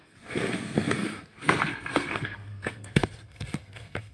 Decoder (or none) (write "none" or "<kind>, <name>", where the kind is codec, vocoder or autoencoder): codec, SNAC